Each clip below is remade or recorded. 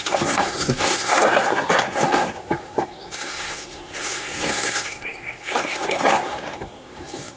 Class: remade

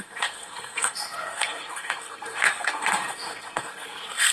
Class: remade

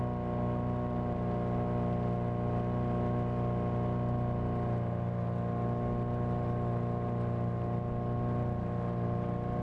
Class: recorded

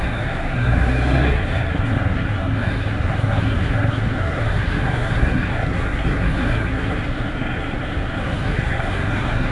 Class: remade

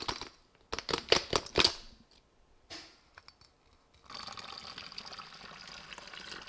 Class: recorded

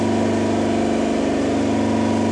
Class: recorded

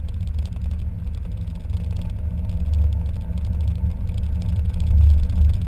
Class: recorded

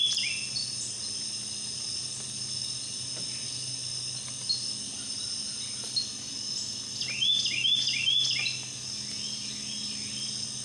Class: recorded